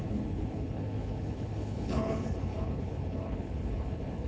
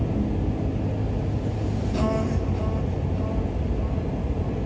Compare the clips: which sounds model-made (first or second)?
first